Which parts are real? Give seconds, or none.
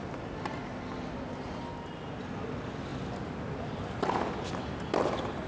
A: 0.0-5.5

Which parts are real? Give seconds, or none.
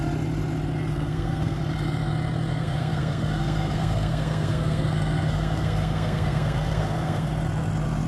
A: 0.0-0.9; 1.6-2.5; 7.3-8.1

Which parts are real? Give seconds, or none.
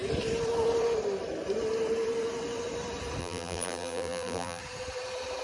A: 0.0-3.2; 4.6-5.4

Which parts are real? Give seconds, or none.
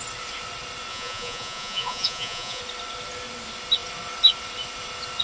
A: 0.0-0.9; 2.6-5.2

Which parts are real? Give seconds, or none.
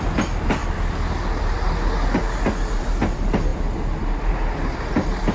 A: 0.0-5.3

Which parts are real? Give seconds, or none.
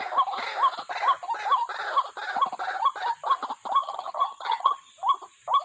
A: 0.0-3.8; 4.9-5.6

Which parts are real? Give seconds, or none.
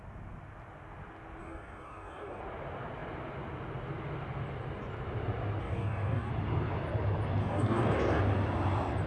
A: 0.0-1.4; 2.4-5.6; 6.3-7.4; 8.2-9.1